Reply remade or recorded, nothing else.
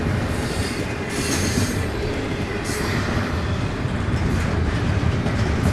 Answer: remade